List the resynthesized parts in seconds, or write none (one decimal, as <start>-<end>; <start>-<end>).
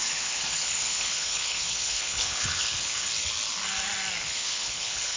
0.0-3.1; 4.2-5.2